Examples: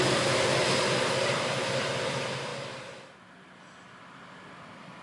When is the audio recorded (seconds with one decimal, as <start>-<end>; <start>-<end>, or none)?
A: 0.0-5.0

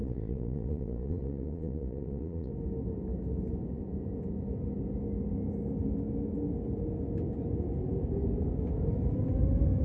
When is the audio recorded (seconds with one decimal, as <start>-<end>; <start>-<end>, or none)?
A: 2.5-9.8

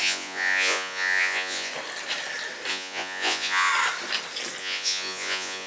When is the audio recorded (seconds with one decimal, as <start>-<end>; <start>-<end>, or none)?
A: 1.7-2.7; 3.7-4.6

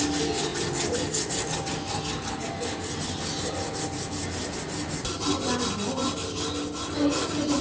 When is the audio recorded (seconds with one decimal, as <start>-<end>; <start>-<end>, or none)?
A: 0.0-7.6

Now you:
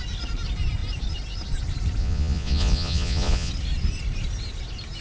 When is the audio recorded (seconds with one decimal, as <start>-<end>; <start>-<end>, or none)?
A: 0.0-2.0; 3.5-5.0